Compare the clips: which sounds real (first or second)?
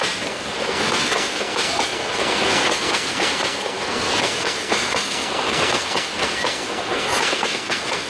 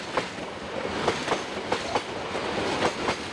second